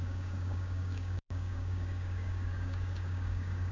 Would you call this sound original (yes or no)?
no